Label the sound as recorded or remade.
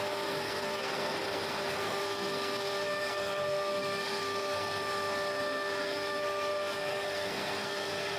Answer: remade